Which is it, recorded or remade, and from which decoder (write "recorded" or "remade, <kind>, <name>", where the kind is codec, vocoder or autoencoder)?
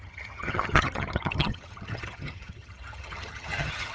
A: remade, vocoder, HiFi-GAN